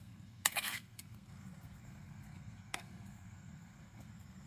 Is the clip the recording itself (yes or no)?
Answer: no